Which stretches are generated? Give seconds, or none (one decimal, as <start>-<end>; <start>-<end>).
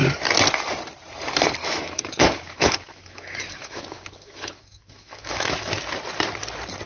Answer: 1.6-5.7